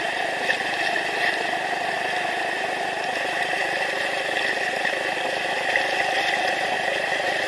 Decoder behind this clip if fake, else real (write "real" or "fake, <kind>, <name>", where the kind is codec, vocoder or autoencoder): real